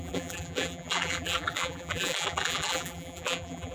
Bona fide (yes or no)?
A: no